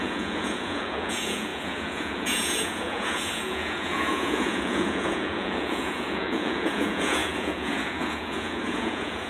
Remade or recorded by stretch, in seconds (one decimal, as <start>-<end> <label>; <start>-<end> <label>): 0.0-9.3 remade